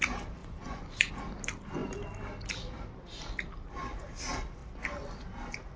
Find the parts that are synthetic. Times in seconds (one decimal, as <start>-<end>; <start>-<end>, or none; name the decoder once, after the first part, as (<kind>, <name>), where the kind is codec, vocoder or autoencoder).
0.4-1.1 (vocoder, Vocos)